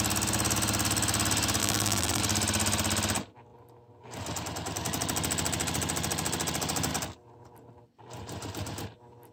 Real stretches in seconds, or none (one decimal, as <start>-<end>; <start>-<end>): 0.0-1.6; 2.2-9.3